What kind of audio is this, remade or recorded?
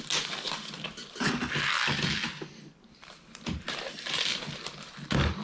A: recorded